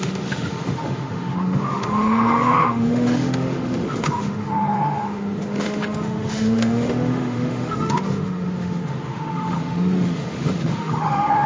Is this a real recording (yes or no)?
no